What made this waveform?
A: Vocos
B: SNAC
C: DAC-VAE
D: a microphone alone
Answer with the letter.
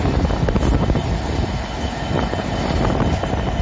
D